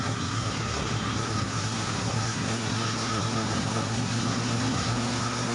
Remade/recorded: remade